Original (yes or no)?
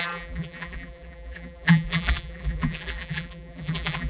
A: no